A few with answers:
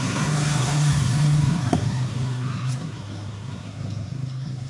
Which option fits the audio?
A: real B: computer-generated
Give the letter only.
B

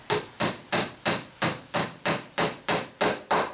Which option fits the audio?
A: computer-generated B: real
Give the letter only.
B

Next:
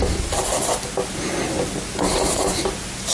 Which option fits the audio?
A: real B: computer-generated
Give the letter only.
A